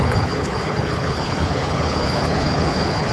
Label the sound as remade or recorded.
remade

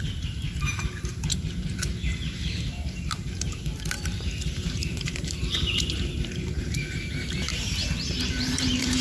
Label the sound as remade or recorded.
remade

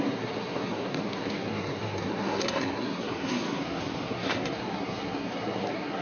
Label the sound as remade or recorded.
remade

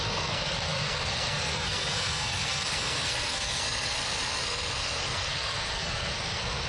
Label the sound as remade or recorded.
remade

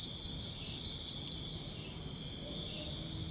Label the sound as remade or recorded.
recorded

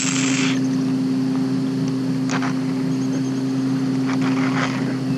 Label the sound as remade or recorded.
recorded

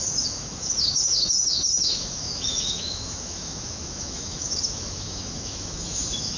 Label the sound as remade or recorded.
remade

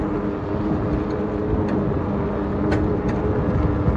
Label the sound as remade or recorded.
recorded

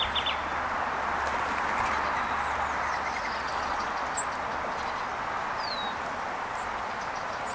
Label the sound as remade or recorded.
recorded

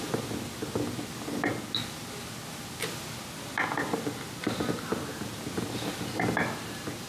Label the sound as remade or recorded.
recorded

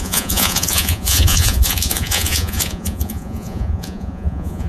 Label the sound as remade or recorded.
remade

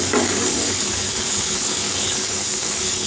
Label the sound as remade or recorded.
remade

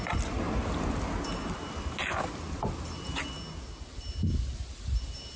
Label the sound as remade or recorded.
recorded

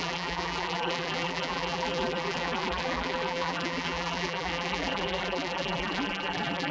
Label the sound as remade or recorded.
remade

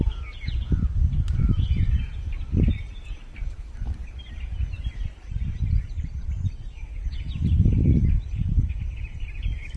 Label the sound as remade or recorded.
remade